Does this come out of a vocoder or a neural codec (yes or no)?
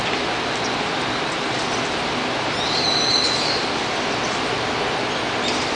no